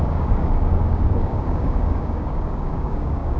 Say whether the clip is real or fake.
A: fake